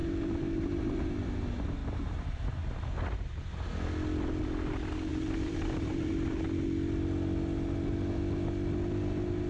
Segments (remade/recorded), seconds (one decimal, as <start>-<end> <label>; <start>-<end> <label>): 0.0-1.4 remade; 1.4-1.8 recorded; 1.8-3.7 remade; 3.7-5.1 recorded; 5.1-6.1 remade; 6.1-9.5 recorded